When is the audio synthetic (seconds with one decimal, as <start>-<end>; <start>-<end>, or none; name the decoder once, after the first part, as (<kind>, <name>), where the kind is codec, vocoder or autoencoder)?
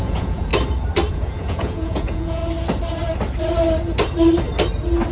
0.0-0.5 (vocoder, Vocos); 1.1-2.4